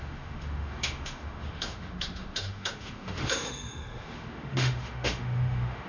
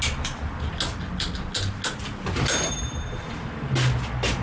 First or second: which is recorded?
second